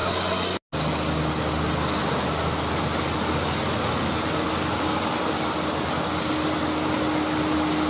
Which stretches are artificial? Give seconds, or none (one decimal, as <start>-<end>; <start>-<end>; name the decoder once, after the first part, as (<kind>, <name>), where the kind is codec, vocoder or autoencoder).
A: none